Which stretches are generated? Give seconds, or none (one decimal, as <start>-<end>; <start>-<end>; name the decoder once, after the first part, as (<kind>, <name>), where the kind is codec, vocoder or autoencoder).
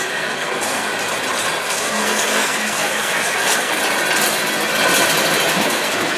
0.0-0.9 (codec, SNAC); 1.6-3.8; 5.5-6.2